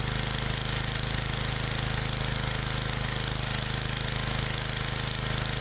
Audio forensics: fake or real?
real